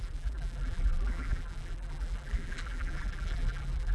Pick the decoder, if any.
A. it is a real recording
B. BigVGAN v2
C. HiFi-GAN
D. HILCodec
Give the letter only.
B